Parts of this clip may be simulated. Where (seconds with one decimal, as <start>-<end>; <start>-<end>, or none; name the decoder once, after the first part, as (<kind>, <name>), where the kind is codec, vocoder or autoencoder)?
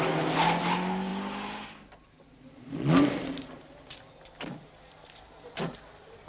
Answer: none